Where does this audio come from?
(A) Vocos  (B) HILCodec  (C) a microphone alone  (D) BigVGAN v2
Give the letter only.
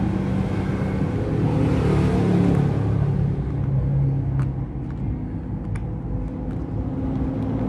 C